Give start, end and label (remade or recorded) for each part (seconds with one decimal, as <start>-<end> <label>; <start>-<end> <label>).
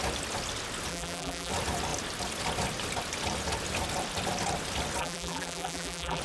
0.0-0.9 recorded; 0.9-1.5 remade; 1.5-5.0 recorded; 5.0-6.2 remade